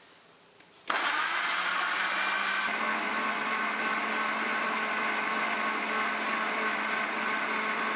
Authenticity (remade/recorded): recorded